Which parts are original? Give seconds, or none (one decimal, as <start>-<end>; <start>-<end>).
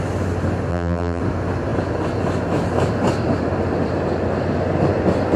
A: 0.0-0.7; 1.2-5.4